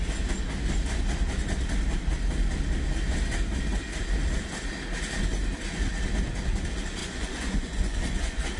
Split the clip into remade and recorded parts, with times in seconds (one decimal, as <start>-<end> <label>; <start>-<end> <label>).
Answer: 0.0-7.0 recorded; 7.0-8.6 remade